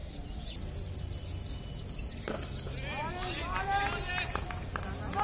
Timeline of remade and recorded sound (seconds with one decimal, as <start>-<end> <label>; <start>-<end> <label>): 0.0-5.2 recorded